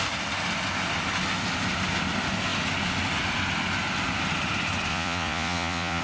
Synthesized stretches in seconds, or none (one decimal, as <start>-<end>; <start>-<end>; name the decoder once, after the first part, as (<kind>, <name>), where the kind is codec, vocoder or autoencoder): 4.9-6.0 (vocoder, Vocos)

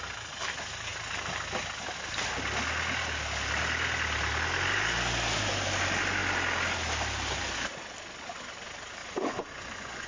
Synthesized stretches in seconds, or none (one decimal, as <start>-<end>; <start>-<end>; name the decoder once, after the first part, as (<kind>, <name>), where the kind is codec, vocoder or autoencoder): 9.0-10.1 (vocoder, Vocos)

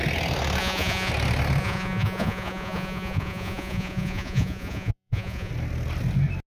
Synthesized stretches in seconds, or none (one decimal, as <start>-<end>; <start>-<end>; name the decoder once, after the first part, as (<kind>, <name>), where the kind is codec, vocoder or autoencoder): 0.6-1.1 (vocoder, Vocos); 1.6-5.5